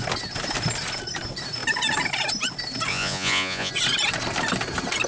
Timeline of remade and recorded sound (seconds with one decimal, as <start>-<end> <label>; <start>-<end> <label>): 0.0-2.9 recorded; 2.9-3.7 remade; 3.7-5.1 recorded